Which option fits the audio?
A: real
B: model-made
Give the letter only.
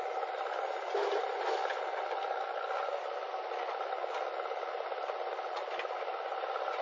A